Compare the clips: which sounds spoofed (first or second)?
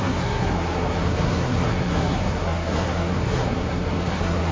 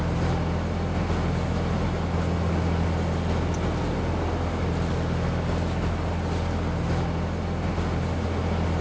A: first